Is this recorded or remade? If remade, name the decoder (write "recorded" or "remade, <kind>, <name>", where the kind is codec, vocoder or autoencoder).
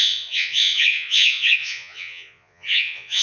remade, vocoder, Vocos